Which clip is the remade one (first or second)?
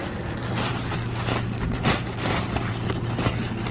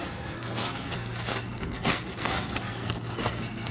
second